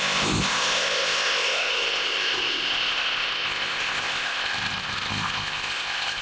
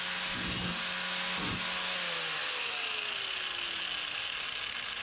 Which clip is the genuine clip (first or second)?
second